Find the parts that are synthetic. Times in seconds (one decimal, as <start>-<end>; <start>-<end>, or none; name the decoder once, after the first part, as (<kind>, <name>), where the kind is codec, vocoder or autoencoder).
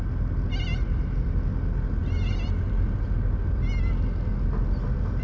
none